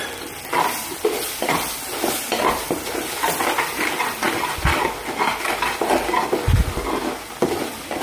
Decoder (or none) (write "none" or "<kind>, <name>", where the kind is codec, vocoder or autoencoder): none